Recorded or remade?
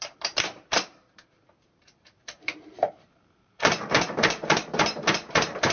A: remade